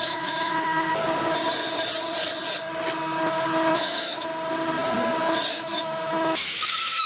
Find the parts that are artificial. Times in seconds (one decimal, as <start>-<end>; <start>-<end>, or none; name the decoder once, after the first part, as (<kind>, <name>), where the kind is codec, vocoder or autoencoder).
0.0-1.0 (autoencoder, DAC-VAE); 3.7-4.3; 5.5-7.1